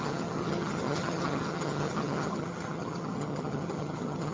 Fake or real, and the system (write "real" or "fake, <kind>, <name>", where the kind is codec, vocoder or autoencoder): fake, vocoder, HiFi-GAN